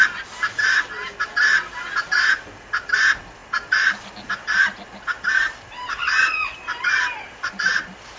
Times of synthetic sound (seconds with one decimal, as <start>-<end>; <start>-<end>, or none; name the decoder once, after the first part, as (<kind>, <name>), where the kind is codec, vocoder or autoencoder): none